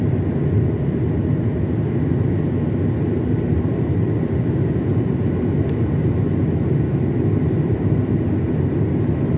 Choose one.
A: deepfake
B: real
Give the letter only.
B